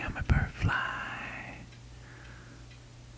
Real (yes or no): yes